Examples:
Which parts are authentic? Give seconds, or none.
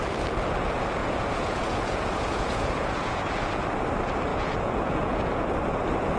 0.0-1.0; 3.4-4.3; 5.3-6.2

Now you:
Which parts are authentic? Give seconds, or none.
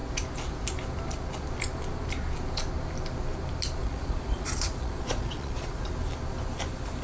0.0-3.8; 5.8-7.0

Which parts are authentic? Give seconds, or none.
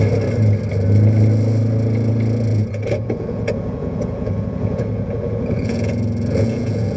0.0-2.5